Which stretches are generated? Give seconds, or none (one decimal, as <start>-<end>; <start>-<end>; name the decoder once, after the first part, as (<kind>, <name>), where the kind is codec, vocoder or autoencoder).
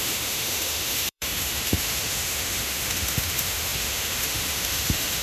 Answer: 0.0-5.2 (autoencoder, DAC-VAE)